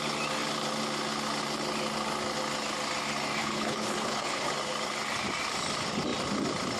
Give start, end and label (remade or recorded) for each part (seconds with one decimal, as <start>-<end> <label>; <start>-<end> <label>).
0.0-3.4 recorded; 3.4-4.5 remade; 4.5-6.8 recorded